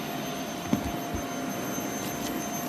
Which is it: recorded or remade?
recorded